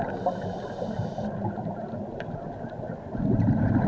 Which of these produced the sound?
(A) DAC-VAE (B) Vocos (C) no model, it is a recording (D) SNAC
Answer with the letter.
C